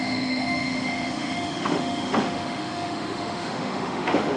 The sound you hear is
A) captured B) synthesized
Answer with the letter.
B